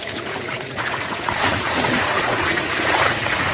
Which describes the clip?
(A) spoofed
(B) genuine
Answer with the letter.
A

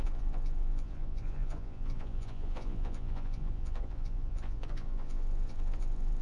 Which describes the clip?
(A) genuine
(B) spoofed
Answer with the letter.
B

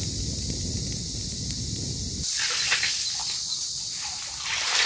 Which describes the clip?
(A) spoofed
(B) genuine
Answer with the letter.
B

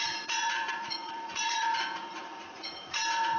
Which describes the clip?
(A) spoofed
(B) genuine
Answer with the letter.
A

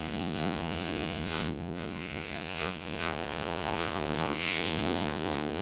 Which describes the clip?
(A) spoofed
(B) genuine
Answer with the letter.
A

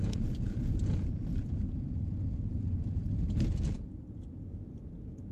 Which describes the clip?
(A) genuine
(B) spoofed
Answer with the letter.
B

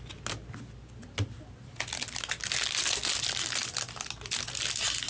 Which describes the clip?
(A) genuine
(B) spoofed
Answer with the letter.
A